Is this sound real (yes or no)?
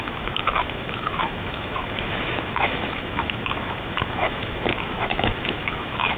no